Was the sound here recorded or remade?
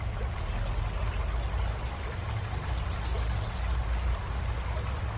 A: recorded